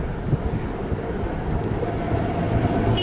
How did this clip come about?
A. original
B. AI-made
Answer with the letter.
A